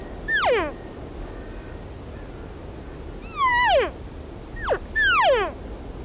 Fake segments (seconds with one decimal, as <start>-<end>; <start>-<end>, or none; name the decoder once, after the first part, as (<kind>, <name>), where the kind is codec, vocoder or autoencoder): none